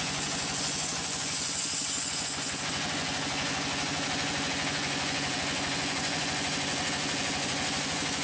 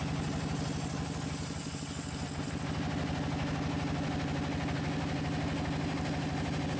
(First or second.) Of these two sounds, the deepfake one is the first